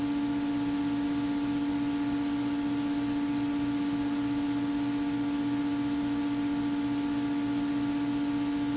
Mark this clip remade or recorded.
recorded